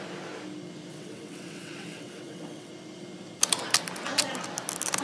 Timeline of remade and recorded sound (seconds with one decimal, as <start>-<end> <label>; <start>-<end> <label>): 0.0-0.9 recorded; 0.9-2.7 remade; 2.7-5.0 recorded